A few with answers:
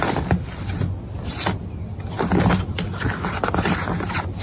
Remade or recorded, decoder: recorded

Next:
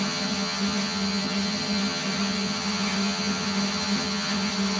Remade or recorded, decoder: remade, vocoder, HiFi-GAN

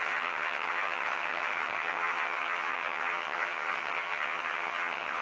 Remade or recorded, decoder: remade, vocoder, HiFi-GAN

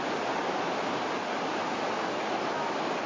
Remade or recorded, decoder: recorded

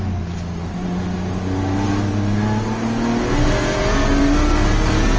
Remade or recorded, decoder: recorded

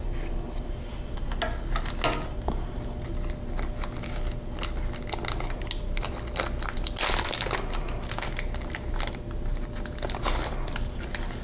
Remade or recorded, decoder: recorded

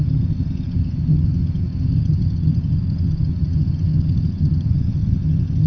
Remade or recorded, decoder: remade, vocoder, HiFi-GAN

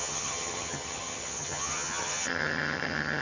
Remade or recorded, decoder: remade, vocoder, HiFi-GAN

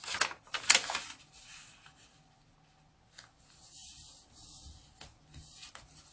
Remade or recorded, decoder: recorded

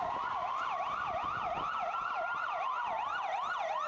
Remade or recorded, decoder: recorded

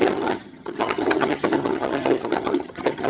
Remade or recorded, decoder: remade, vocoder, HiFi-GAN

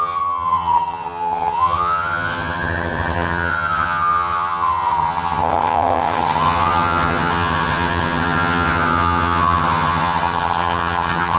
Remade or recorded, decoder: remade, vocoder, HiFi-GAN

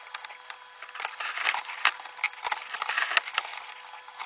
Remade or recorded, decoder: recorded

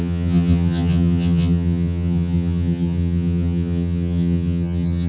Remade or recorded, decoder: remade, vocoder, HiFi-GAN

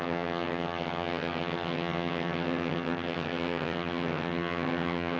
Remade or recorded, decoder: remade, vocoder, HiFi-GAN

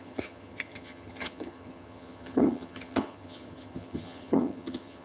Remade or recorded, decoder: remade, vocoder, HiFi-GAN